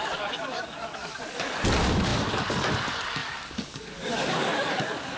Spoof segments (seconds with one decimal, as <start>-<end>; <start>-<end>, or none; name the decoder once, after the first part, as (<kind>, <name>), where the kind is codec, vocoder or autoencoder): 0.0-5.2 (codec, DAC)